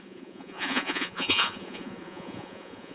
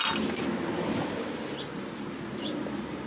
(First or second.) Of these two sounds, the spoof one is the first